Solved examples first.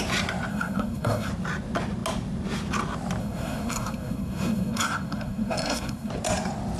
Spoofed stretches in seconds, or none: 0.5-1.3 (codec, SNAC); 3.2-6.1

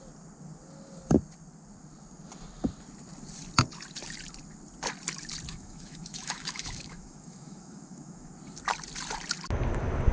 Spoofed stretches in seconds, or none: 5.5-8.3 (autoencoder, DAC-VAE)

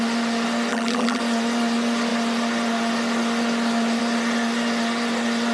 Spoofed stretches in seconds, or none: 0.7-1.2 (vocoder, BigVGAN v2)

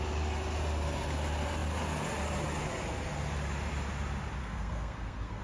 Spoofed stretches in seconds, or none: 4.4-5.4 (codec, SNAC)

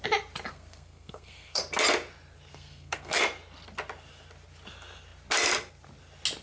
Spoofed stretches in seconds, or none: 0.5-1.6 (codec, SNAC); 2.5-3.2

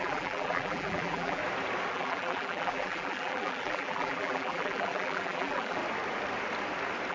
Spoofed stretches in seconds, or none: 0.0-1.4 (vocoder, BigVGAN v2); 1.9-5.8

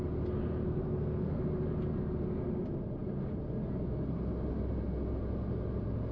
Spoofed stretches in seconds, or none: 0.7-1.4 (codec, SNAC)

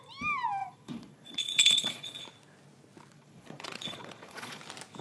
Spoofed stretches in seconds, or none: 0.6-2.2 (vocoder, Vocos); 3.1-4.6